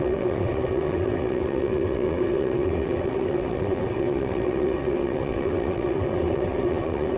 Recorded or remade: remade